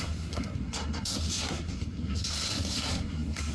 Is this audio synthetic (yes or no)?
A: yes